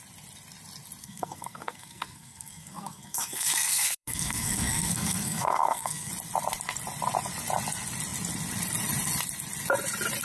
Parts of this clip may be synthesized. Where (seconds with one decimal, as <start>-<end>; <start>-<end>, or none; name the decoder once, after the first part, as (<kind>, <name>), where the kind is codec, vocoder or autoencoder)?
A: 1.0-6.1 (codec, SNAC)